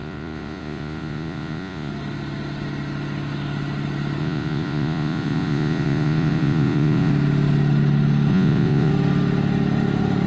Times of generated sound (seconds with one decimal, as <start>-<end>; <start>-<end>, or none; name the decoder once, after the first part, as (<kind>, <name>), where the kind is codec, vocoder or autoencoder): 0.0-1.9 (vocoder, Vocos); 4.2-7.1; 8.3-8.9